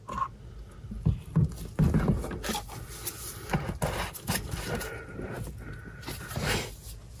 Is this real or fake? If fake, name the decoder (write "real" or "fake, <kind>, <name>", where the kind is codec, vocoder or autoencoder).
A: real